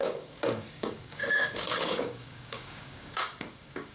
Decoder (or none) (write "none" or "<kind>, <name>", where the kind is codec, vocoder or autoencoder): codec, DAC